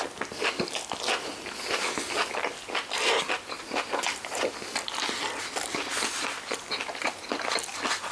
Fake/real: real